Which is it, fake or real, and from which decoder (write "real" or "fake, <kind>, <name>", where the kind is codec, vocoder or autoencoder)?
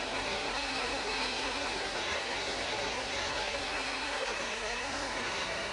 fake, codec, SNAC